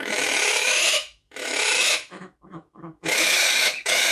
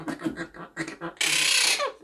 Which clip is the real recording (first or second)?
second